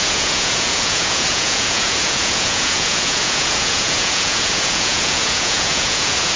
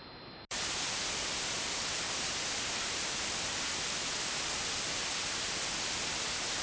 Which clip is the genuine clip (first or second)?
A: second